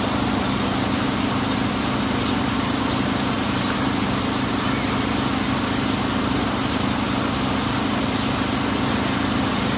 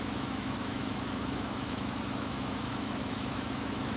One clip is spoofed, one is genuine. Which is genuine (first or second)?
first